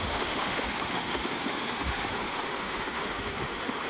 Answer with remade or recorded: remade